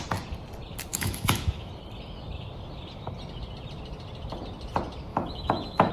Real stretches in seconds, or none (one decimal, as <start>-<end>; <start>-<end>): 0.0-0.9; 1.7-5.1

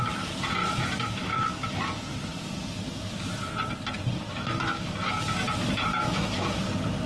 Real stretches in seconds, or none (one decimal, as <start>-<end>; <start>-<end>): 0.0-0.6; 1.7-4.3; 5.0-5.9; 6.6-7.1

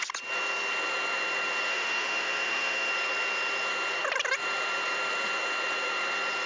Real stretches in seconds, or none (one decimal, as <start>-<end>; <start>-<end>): 0.0-1.7; 2.9-6.5

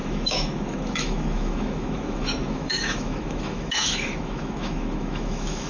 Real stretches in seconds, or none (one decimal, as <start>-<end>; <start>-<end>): none

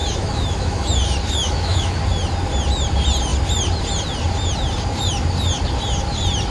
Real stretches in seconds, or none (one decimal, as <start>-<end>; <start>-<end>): 0.9-1.4; 2.0-6.5

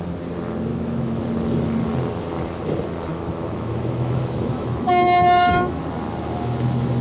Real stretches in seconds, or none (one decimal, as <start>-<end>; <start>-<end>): 0.0-0.7; 1.2-3.1; 5.8-7.0

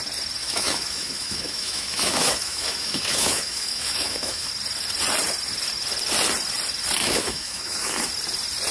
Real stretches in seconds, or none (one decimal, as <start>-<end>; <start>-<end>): 0.0-0.4; 4.5-7.0; 8.1-8.7

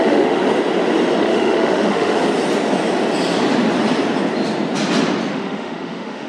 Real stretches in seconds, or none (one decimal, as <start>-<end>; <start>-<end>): 0.4-1.2; 2.2-5.3